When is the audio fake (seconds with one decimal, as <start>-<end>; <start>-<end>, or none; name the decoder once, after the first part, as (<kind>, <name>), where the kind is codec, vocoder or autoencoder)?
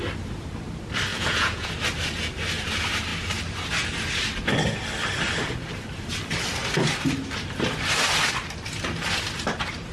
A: 1.1-1.7 (vocoder, Vocos)